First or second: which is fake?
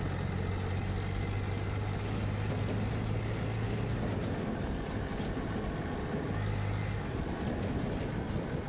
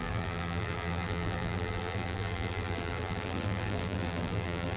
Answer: second